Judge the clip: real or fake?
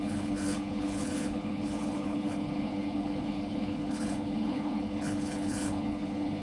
fake